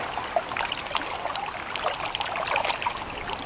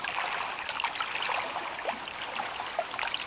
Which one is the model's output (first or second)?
first